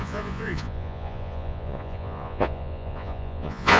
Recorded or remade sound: remade